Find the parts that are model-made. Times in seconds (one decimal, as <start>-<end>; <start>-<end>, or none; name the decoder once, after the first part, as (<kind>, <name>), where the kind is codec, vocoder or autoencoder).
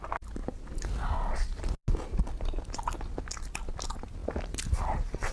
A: none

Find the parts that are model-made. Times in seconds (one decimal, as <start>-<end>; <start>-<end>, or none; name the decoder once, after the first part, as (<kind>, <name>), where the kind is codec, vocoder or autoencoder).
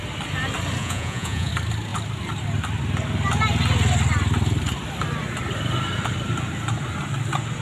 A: 0.8-1.5 (vocoder, Vocos)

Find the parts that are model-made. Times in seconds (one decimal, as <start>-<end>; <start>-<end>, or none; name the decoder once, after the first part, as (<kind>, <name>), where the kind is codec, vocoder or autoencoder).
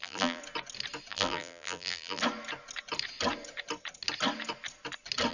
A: 0.0-0.4 (vocoder, BigVGAN v2); 1.1-2.2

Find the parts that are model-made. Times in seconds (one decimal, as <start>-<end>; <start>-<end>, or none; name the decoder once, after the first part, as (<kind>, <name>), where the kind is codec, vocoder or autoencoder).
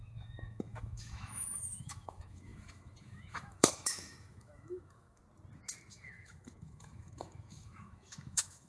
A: 0.0-5.2 (autoencoder, DAC-VAE); 5.9-8.7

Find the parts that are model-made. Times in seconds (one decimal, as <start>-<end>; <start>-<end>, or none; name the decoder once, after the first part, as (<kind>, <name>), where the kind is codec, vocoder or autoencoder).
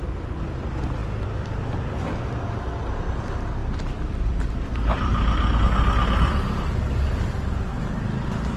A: 1.0-2.0 (vocoder, BigVGAN v2); 3.6-5.6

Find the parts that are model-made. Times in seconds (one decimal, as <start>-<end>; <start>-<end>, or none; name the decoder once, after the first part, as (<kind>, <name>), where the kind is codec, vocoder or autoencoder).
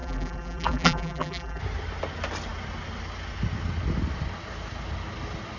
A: 0.0-1.6 (vocoder, BigVGAN v2)